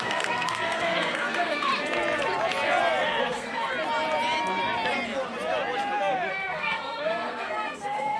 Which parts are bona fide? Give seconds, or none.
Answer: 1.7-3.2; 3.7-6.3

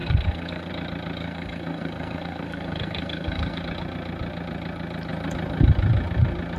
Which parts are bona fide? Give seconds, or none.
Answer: 0.7-1.2; 3.6-6.6